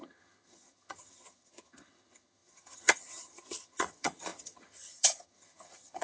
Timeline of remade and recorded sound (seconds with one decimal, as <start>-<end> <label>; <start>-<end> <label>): 0.0-6.0 remade